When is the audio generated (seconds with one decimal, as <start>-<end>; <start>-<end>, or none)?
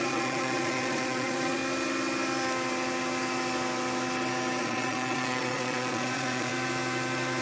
0.0-1.6; 4.6-6.5